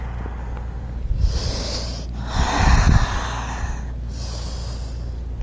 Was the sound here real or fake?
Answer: real